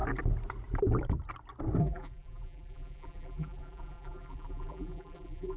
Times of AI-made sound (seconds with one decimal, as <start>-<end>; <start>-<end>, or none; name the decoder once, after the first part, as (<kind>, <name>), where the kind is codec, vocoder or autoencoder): 1.8-5.6 (vocoder, BigVGAN v2)